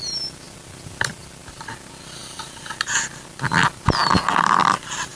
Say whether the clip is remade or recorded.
recorded